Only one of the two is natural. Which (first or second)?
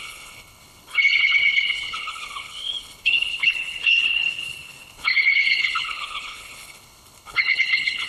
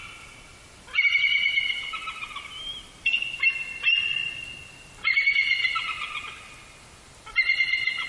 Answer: second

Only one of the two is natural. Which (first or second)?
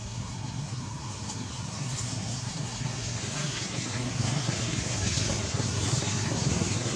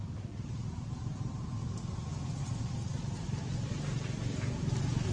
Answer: second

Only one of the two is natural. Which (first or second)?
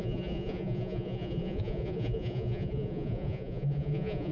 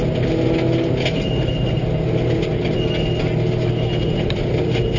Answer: second